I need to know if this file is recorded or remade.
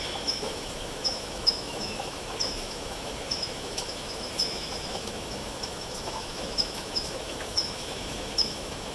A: remade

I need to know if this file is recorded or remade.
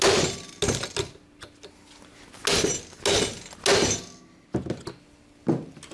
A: recorded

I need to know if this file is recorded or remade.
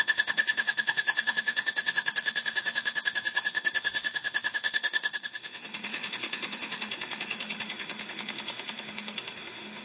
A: remade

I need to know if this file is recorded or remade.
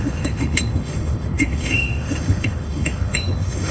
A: remade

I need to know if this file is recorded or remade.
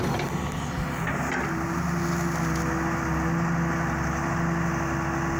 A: recorded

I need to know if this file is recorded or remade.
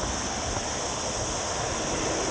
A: recorded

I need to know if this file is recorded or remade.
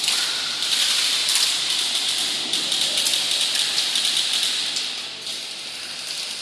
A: recorded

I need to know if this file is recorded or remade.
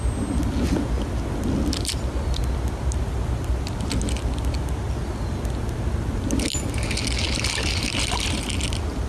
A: recorded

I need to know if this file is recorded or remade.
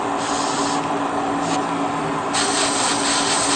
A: recorded